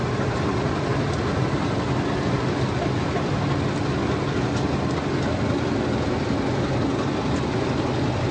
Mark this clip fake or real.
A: real